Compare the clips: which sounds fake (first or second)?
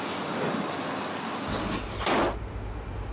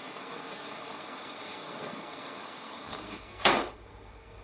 second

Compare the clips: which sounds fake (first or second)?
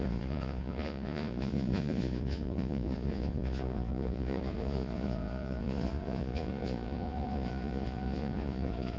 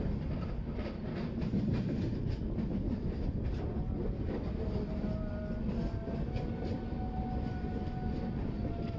first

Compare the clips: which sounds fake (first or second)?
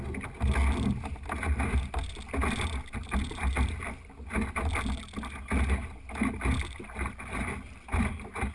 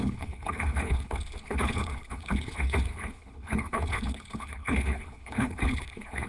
second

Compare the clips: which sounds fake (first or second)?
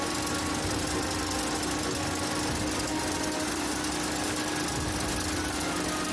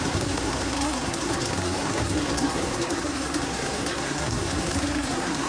second